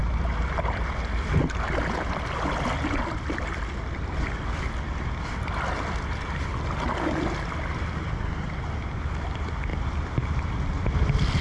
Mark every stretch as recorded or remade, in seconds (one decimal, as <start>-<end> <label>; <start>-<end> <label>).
0.0-1.3 remade; 1.3-9.7 recorded; 9.7-11.4 remade

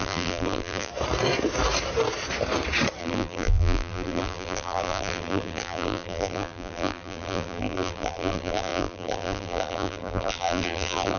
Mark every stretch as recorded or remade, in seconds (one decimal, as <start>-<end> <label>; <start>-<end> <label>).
0.0-0.9 remade; 0.9-3.0 recorded; 3.0-11.2 remade